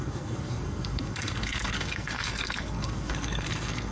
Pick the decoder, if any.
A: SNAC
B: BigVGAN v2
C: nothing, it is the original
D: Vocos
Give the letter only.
A